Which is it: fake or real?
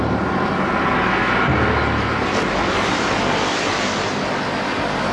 real